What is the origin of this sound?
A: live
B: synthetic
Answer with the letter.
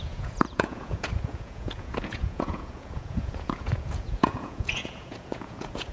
B